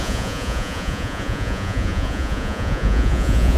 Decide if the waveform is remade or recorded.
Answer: remade